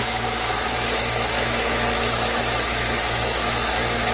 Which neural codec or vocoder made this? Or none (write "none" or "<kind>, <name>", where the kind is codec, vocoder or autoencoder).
autoencoder, DAC-VAE